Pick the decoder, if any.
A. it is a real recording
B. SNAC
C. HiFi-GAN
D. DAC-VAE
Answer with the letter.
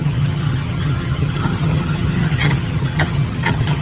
C